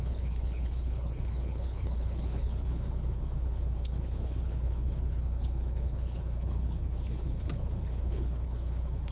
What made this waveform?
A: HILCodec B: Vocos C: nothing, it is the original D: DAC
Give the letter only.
A